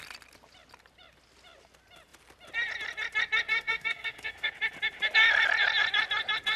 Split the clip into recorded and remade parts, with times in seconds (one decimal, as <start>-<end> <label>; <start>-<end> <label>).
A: 0.0-3.5 recorded; 3.5-4.5 remade; 4.5-6.6 recorded